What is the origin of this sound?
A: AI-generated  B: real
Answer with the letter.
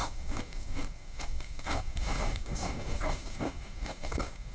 A